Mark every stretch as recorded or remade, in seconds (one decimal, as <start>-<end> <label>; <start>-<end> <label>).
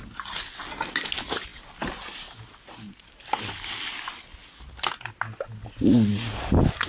0.0-6.9 recorded